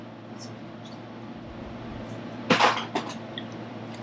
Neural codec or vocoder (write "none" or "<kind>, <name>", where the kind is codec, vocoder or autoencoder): none